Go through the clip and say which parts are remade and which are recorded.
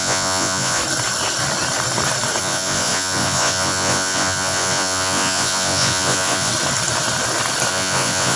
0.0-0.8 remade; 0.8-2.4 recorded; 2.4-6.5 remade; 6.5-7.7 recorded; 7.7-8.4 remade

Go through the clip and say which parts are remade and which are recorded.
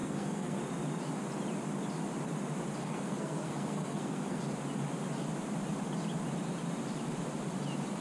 0.0-0.6 remade; 0.6-2.8 recorded; 2.8-4.4 remade; 4.4-8.0 recorded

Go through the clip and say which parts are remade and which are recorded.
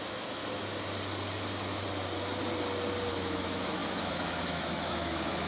0.0-0.4 remade; 0.4-3.1 recorded; 3.1-5.5 remade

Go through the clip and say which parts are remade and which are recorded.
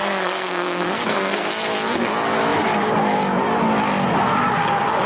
0.0-1.5 remade; 1.5-5.1 recorded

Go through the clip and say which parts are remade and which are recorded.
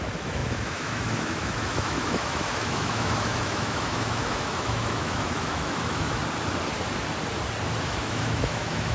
0.0-6.2 remade; 6.2-7.8 recorded; 7.8-8.9 remade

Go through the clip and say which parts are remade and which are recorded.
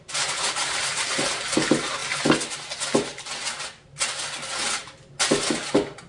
0.0-6.1 recorded